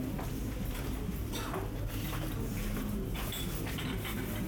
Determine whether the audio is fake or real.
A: real